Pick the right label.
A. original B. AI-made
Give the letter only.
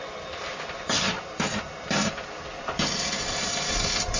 A